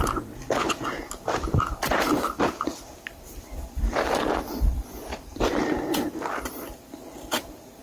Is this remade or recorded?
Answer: remade